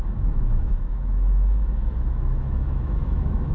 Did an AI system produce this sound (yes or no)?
yes